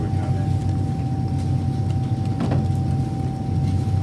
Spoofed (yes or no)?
no